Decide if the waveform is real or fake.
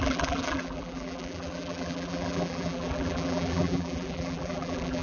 fake